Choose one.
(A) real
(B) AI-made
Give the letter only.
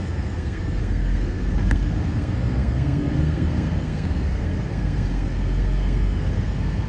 B